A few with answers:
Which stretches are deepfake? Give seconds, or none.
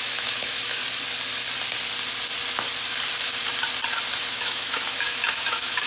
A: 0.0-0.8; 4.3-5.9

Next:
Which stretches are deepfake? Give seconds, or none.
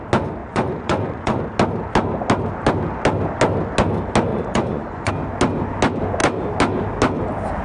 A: 0.4-1.4; 4.3-5.1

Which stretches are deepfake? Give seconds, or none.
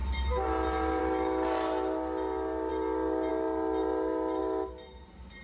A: none